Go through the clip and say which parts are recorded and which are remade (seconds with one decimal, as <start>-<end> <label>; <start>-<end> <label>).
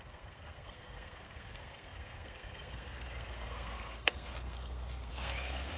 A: 0.0-5.8 remade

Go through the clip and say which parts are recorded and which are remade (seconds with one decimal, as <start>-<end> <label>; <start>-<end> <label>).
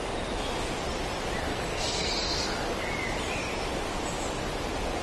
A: 0.0-1.5 recorded; 1.5-2.1 remade; 2.1-5.0 recorded